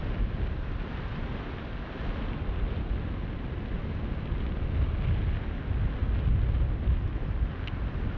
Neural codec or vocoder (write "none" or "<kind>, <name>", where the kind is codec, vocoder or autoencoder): none